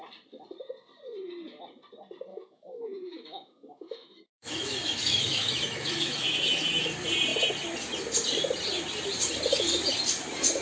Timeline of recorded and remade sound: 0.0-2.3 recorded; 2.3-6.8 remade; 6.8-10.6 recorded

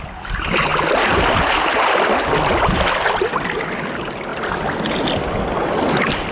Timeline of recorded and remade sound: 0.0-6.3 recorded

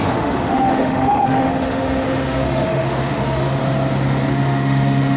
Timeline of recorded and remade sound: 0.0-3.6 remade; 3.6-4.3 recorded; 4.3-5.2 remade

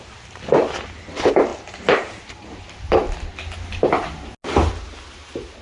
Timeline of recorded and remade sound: 0.0-5.6 recorded

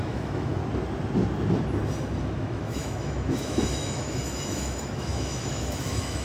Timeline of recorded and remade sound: 0.0-0.6 remade; 0.6-2.2 recorded; 2.2-6.2 remade

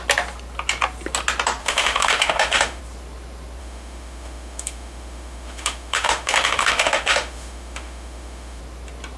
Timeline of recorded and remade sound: 0.0-1.6 recorded; 1.6-2.8 remade; 2.8-3.6 recorded; 3.6-8.6 remade; 8.6-9.2 recorded

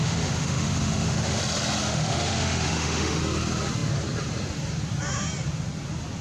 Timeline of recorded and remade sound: 0.0-1.4 remade; 1.4-1.8 recorded; 1.8-3.2 remade; 3.2-6.2 recorded

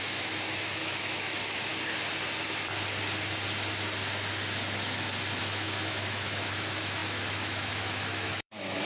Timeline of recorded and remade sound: 0.0-1.7 remade; 1.7-5.4 recorded; 5.4-8.8 remade